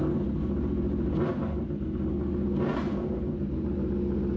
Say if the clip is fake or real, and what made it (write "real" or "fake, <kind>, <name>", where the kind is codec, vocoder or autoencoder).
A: real